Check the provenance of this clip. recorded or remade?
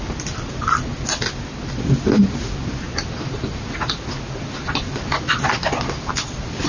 recorded